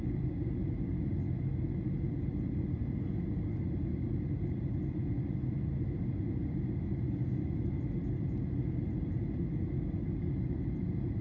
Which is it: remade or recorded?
recorded